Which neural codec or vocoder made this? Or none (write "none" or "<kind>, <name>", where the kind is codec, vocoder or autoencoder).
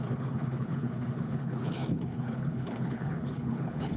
codec, HILCodec